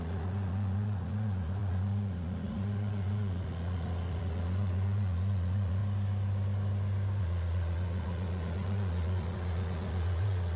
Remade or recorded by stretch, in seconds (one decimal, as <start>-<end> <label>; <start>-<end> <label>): 0.0-5.8 remade; 5.8-7.2 recorded; 7.2-10.6 remade